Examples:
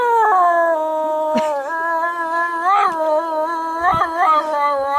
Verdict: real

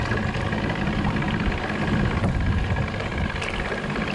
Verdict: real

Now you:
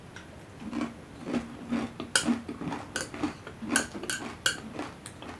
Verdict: real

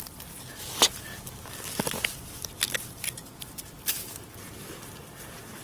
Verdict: real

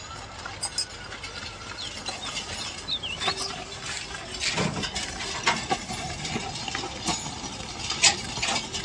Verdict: real